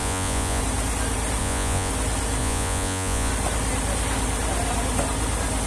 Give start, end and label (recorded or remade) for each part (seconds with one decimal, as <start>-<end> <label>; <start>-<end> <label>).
0.0-0.6 remade; 0.6-1.4 recorded; 1.4-1.9 remade; 1.9-2.4 recorded; 2.4-3.3 remade; 3.3-5.7 recorded